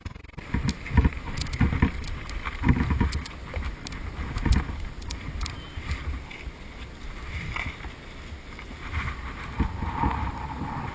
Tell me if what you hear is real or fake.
real